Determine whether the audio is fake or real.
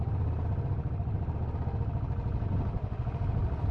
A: real